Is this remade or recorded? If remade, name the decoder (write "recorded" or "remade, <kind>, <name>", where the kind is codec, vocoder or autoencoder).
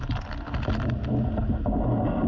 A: recorded